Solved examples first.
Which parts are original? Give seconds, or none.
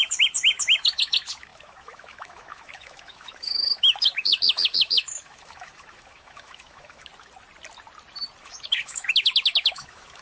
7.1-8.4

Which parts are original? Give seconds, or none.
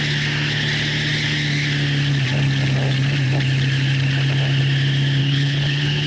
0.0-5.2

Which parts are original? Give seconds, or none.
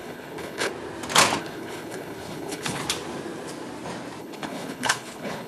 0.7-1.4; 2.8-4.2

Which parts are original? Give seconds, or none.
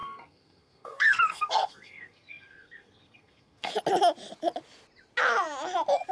3.7-6.1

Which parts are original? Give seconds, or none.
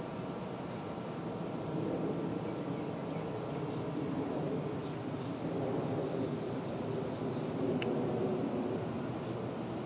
0.0-9.9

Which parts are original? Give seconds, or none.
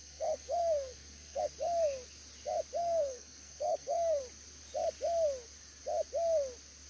1.4-2.8; 4.2-6.9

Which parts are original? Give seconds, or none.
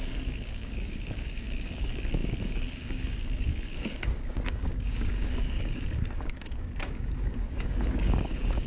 none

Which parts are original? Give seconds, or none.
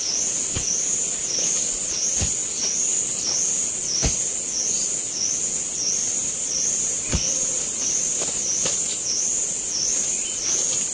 0.0-6.0; 8.8-10.9